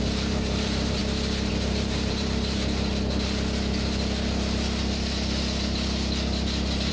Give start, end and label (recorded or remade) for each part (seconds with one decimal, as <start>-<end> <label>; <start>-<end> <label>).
0.0-1.0 remade; 1.0-1.5 recorded; 1.5-2.9 remade; 2.9-6.9 recorded